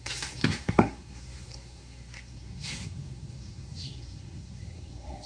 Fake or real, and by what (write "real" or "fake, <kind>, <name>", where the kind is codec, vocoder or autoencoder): fake, codec, SNAC